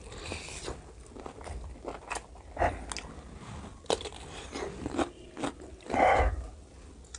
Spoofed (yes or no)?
no